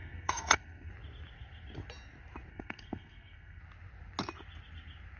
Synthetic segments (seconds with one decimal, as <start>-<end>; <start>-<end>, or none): 0.0-0.9; 2.5-3.6